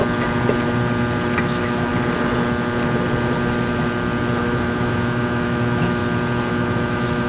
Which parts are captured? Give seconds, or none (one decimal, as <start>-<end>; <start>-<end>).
0.0-1.4; 1.9-4.4; 6.0-6.5